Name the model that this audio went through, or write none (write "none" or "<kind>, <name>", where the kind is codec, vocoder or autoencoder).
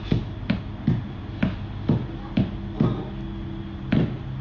none